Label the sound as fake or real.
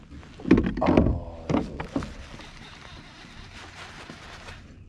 real